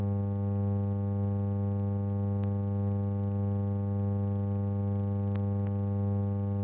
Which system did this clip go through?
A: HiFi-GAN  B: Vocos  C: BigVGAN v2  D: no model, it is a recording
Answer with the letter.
D